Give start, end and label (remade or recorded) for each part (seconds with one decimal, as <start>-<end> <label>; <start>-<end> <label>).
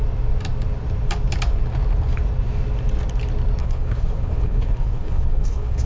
0.0-3.6 recorded; 3.6-5.9 remade